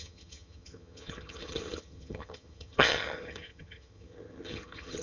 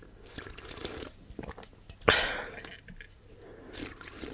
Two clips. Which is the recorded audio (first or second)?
second